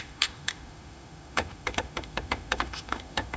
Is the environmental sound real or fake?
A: fake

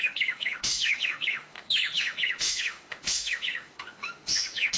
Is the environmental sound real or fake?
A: fake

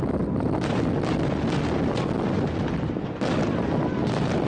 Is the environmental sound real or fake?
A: real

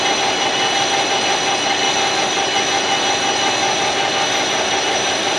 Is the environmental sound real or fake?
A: real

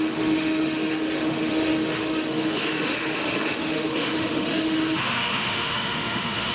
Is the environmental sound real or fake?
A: fake